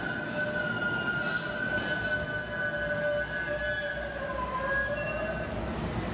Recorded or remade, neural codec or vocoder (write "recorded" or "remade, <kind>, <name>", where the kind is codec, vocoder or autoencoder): recorded